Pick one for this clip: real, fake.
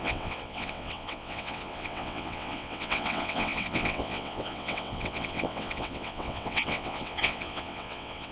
fake